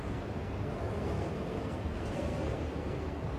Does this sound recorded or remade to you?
remade